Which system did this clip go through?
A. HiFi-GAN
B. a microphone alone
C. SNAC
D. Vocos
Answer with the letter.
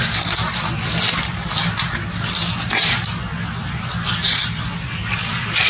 B